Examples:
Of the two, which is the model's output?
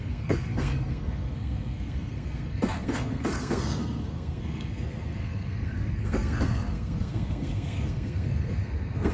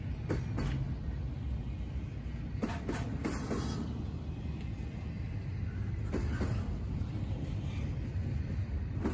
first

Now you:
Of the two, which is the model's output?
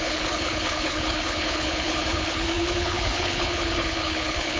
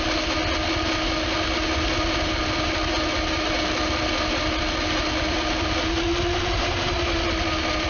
first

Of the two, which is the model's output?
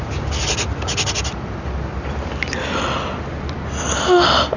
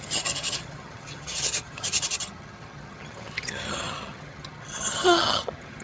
second